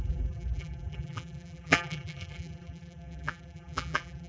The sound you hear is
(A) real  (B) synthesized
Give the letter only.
B